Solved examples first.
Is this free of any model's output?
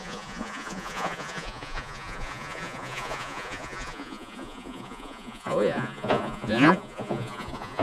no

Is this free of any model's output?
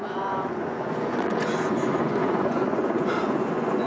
no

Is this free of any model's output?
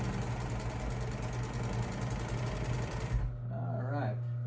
yes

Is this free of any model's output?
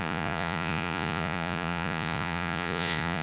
no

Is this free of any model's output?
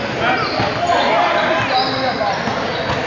yes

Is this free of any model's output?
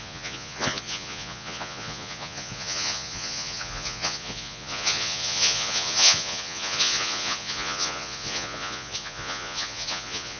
no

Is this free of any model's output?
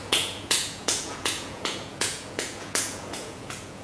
no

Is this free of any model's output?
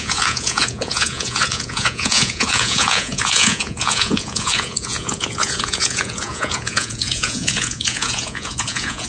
no